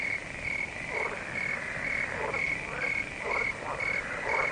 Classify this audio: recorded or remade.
recorded